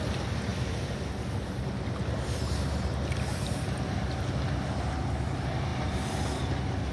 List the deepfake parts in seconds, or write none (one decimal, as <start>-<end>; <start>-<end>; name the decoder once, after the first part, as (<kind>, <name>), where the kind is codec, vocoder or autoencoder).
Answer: none